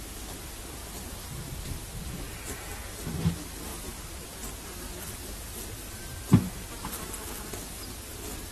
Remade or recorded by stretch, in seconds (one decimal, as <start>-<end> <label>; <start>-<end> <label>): 0.0-0.8 recorded; 0.8-2.0 remade; 2.0-3.7 recorded; 3.7-5.2 remade; 5.2-6.1 recorded; 6.1-6.8 remade; 6.8-8.5 recorded